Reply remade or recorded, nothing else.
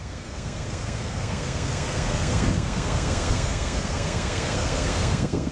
remade